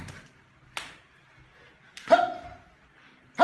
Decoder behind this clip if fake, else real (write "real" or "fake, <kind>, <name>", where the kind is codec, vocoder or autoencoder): real